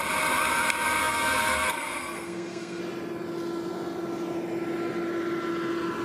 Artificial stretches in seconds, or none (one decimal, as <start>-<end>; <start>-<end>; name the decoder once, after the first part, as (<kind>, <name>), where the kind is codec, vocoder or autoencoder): 1.0-2.8 (codec, SNAC)